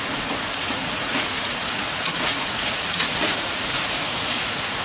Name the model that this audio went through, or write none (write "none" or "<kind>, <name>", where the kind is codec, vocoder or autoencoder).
vocoder, Vocos